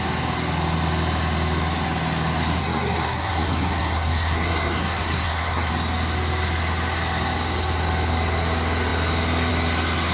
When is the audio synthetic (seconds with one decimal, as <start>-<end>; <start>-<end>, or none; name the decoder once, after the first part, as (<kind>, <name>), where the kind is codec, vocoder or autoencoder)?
2.6-5.7 (codec, SNAC)